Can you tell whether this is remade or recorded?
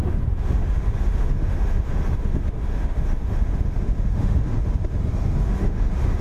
remade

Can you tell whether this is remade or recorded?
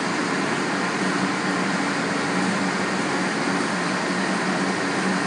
recorded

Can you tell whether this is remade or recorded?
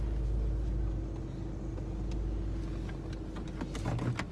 recorded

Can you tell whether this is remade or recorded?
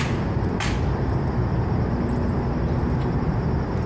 recorded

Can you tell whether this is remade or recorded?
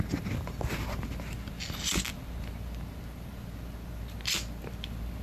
recorded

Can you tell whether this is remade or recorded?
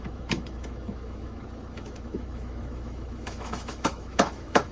remade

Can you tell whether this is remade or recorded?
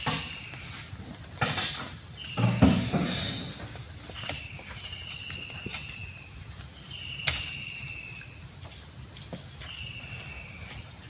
recorded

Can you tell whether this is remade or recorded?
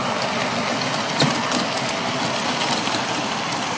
recorded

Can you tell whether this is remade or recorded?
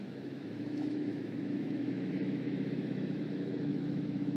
remade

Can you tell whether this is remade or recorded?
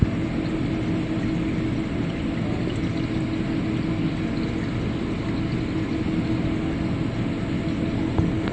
recorded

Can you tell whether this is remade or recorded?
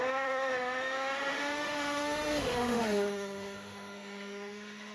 remade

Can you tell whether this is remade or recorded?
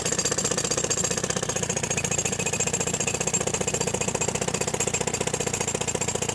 recorded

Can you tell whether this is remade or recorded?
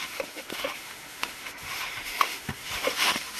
remade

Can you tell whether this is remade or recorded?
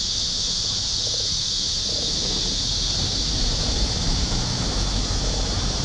remade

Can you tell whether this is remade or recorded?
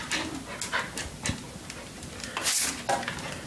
recorded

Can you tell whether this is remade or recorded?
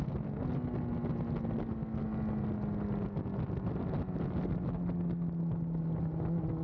recorded